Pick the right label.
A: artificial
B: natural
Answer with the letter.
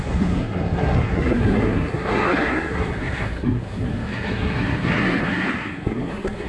A